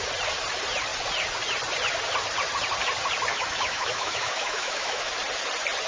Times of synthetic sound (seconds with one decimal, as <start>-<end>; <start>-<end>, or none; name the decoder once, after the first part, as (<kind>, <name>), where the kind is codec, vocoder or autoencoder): 3.3-5.1 (autoencoder, DAC-VAE)